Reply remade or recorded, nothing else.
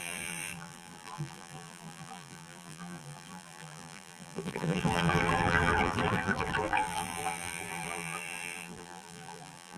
remade